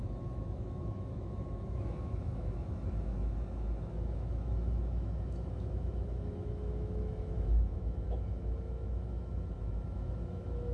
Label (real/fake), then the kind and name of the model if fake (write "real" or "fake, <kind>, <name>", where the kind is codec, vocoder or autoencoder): fake, autoencoder, DAC-VAE